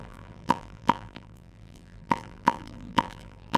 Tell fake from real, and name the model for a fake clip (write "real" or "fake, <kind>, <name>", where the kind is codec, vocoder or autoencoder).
fake, vocoder, BigVGAN v2